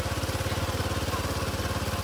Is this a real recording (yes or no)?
yes